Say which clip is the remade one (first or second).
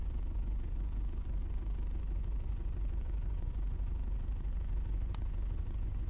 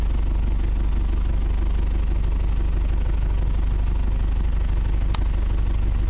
first